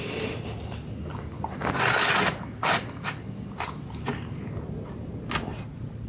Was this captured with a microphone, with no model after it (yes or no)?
yes